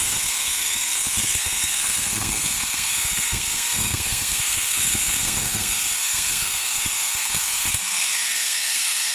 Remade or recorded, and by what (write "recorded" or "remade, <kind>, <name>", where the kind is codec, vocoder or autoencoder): remade, codec, SNAC